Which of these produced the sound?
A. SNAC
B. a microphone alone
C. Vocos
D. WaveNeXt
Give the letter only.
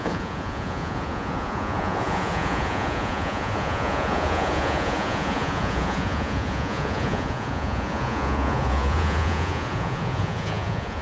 C